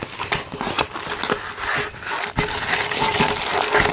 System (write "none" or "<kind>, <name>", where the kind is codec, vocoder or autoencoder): none